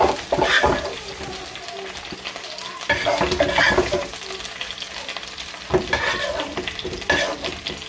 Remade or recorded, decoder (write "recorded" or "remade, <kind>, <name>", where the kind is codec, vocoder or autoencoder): recorded